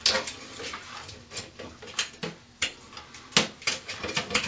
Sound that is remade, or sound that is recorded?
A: recorded